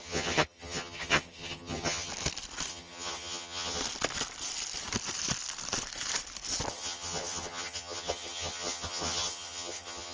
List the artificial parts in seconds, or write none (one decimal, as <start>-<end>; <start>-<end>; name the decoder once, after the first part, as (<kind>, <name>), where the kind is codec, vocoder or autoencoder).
0.0-2.1 (vocoder, HiFi-GAN); 2.7-3.8; 6.7-10.1